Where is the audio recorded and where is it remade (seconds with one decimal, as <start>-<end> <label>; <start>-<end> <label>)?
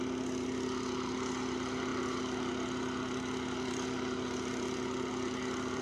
0.0-5.8 recorded